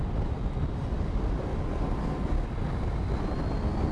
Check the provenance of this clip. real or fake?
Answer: real